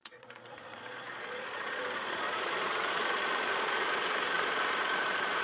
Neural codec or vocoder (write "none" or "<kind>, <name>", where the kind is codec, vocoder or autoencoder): vocoder, Vocos